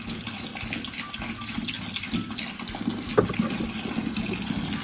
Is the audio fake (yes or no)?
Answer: no